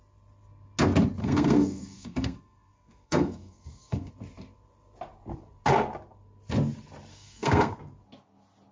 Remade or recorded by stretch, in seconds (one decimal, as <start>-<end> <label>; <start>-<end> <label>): 0.0-1.2 recorded; 1.2-4.1 remade; 4.1-7.1 recorded; 7.1-7.8 remade; 7.8-8.7 recorded